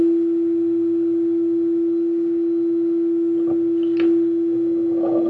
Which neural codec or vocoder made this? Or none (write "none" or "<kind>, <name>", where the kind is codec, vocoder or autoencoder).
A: none